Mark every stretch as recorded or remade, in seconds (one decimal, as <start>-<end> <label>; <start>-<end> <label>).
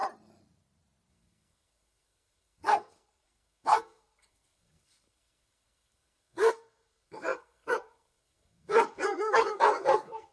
0.0-1.1 recorded; 1.1-10.3 remade